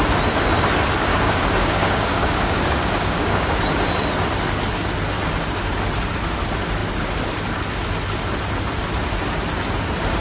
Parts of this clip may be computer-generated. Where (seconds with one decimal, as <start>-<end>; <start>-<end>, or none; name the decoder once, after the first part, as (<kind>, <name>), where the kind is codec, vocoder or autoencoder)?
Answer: 1.1-3.6 (codec, DAC)